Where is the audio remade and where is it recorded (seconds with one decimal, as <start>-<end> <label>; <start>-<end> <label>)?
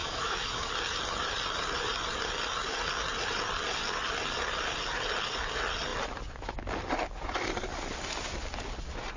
0.0-0.7 remade; 0.7-9.2 recorded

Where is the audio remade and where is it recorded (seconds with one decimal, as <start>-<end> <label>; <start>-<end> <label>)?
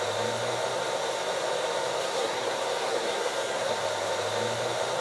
0.0-2.0 recorded; 2.0-3.7 remade; 3.7-5.0 recorded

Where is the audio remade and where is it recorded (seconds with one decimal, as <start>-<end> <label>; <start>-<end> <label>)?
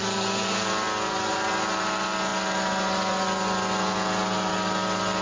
0.0-5.2 recorded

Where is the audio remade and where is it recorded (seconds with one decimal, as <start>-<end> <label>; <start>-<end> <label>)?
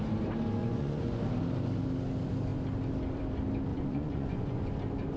0.0-0.6 recorded; 0.6-1.2 remade; 1.2-3.7 recorded; 3.7-4.7 remade; 4.7-5.2 recorded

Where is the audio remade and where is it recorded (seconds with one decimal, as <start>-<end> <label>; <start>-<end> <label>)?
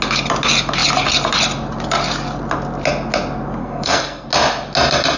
0.0-3.6 recorded; 3.6-4.3 remade; 4.3-5.2 recorded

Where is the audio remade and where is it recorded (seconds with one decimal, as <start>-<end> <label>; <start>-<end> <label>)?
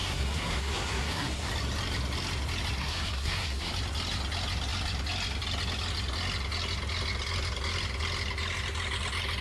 0.0-1.5 remade; 1.5-2.8 recorded; 2.8-3.7 remade; 3.7-9.4 recorded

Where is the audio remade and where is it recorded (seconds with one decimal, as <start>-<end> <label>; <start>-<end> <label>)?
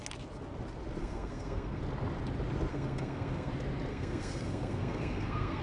0.0-1.0 recorded; 1.0-1.8 remade; 1.8-2.7 recorded; 2.7-3.5 remade; 3.5-3.9 recorded; 3.9-5.6 remade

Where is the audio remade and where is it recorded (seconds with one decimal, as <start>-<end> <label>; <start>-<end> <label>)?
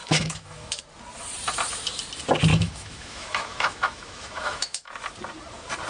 0.0-0.8 remade; 0.8-2.5 recorded; 2.5-4.9 remade; 4.9-5.9 recorded